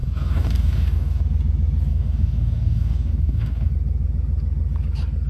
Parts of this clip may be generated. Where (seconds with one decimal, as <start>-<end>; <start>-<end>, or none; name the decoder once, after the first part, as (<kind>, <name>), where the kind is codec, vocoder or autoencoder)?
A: 0.0-1.2 (codec, DAC); 1.9-3.7